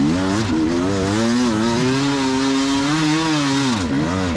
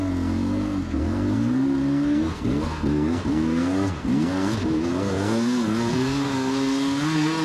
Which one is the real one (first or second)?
first